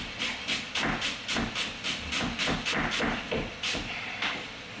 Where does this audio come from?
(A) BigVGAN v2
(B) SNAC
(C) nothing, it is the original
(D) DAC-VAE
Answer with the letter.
A